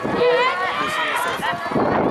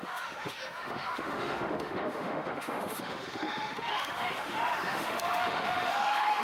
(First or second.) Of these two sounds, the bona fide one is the first